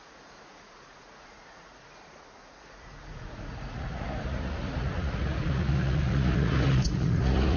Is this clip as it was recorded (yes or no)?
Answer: no